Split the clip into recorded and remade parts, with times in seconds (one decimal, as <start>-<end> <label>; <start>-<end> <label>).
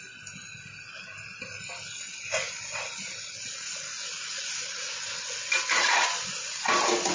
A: 0.0-7.1 recorded